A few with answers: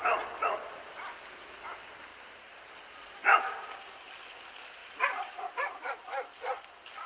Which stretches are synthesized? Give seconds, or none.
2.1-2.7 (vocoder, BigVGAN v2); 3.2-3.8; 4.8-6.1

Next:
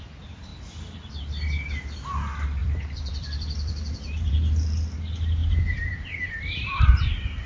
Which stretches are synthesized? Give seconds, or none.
2.6-4.3 (vocoder, BigVGAN v2); 5.4-6.8

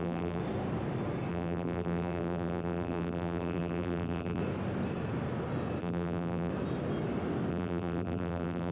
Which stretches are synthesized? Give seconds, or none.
0.0-0.4 (vocoder, BigVGAN v2); 1.3-4.4; 5.8-6.5; 7.5-8.7

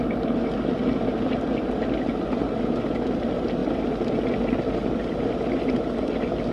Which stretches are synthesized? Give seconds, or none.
none

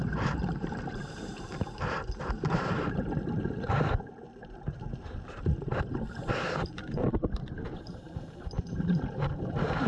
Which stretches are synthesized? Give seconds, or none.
0.0-9.9 (vocoder, BigVGAN v2)

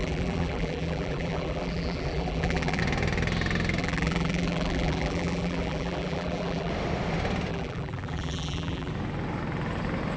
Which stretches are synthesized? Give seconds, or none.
0.0-2.8 (vocoder, BigVGAN v2); 3.8-6.7; 7.5-8.9

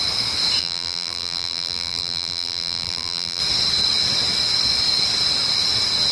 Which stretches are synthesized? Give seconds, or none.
0.6-3.4 (vocoder, BigVGAN v2)